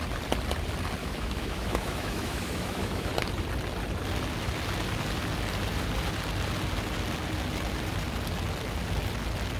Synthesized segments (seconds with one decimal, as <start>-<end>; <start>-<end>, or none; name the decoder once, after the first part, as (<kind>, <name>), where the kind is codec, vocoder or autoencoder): 1.0-3.1 (autoencoder, DAC-VAE)